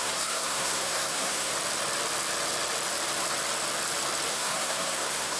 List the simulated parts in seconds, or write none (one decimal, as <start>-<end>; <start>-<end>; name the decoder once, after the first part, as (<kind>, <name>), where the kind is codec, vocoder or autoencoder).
0.0-1.5 (codec, SNAC); 4.3-5.4